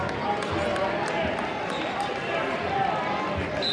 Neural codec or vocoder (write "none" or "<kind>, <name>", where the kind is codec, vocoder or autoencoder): none